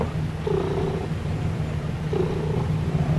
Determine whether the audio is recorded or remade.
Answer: recorded